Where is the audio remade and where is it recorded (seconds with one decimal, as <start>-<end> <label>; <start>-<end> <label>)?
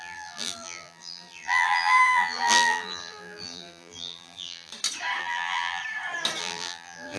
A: 0.0-4.7 remade; 4.7-5.2 recorded; 5.2-5.8 remade; 5.8-6.4 recorded; 6.4-7.2 remade